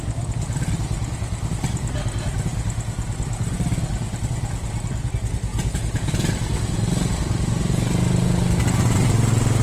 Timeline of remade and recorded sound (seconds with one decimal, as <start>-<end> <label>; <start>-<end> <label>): 0.0-5.5 recorded; 5.5-6.3 remade; 6.3-9.6 recorded